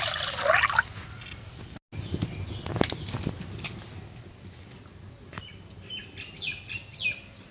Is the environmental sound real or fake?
real